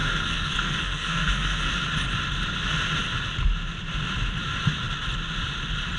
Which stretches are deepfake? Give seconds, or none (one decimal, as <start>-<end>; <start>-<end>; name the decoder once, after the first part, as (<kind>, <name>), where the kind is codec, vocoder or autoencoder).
0.0-1.7 (codec, SNAC)